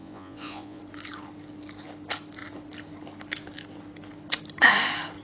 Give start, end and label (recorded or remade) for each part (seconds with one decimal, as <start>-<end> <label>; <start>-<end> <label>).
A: 0.0-0.8 remade; 0.8-5.2 recorded